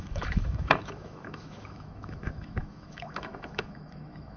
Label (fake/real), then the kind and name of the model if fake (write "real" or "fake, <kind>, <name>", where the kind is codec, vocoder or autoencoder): fake, autoencoder, DAC-VAE